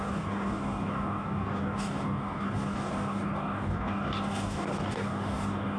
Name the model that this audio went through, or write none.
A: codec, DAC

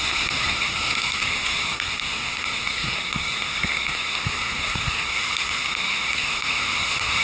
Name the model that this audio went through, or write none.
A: codec, SNAC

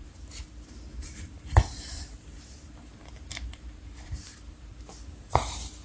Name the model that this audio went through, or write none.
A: vocoder, BigVGAN v2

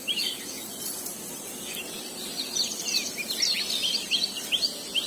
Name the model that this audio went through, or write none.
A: none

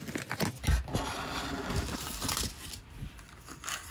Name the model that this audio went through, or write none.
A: none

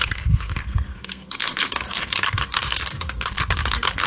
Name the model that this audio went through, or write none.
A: codec, SNAC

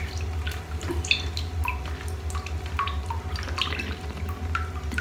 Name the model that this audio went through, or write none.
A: none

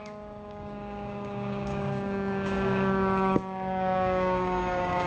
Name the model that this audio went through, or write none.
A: codec, DAC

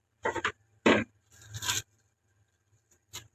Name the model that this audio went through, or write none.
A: none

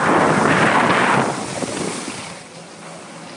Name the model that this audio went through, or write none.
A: none